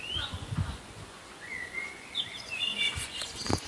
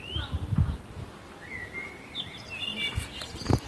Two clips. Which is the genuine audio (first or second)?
second